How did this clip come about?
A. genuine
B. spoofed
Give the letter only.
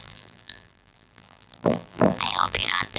B